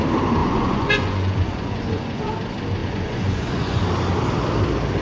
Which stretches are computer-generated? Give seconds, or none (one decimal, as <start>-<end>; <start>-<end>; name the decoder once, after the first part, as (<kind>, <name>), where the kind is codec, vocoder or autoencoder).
0.4-2.3 (vocoder, Vocos); 2.8-3.8